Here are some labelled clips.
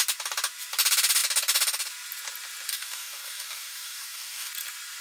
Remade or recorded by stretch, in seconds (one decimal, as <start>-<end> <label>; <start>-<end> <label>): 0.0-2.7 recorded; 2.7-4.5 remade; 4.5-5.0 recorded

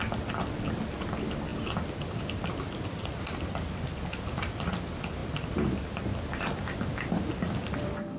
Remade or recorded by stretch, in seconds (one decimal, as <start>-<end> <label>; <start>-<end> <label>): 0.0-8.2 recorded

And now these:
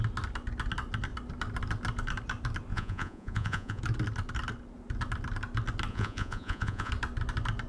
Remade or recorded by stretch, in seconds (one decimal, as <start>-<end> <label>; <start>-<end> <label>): 0.0-2.7 recorded; 2.7-3.8 remade; 3.8-5.9 recorded; 5.9-6.9 remade; 6.9-7.7 recorded